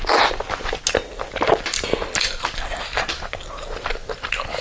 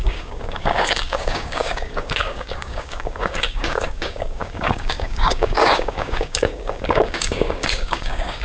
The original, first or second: first